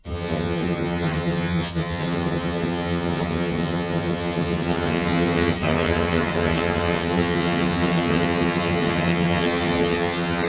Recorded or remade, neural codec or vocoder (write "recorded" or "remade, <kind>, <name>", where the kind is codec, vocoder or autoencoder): remade, vocoder, HiFi-GAN